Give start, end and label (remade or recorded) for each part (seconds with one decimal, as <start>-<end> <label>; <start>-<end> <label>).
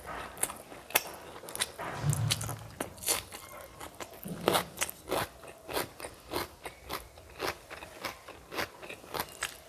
0.0-9.7 recorded